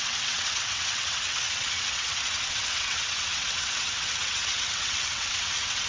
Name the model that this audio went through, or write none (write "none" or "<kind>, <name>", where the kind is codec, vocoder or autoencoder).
vocoder, WaveNeXt